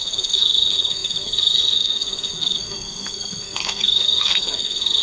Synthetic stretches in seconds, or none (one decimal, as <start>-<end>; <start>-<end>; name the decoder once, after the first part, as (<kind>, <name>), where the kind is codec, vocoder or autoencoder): 0.0-5.0 (codec, SNAC)